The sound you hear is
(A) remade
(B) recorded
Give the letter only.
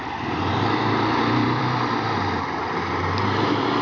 A